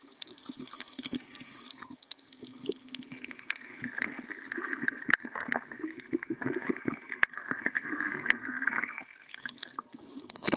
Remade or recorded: remade